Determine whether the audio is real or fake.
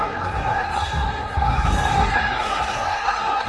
fake